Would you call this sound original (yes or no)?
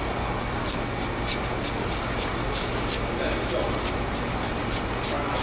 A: yes